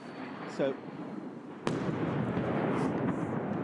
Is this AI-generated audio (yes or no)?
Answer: no